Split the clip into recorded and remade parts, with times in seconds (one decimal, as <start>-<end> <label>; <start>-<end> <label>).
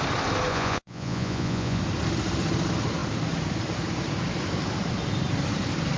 0.0-0.5 recorded; 0.5-1.8 remade; 1.8-6.0 recorded